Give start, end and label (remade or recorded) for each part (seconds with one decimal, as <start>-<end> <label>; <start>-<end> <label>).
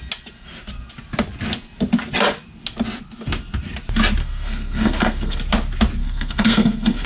0.0-4.2 recorded; 4.2-5.4 remade; 5.4-6.0 recorded; 6.0-7.1 remade